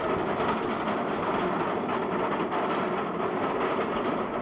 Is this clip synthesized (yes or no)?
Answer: no